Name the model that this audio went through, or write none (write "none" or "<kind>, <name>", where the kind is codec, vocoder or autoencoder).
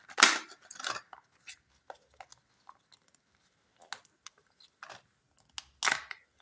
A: none